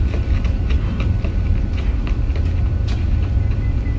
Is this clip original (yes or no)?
yes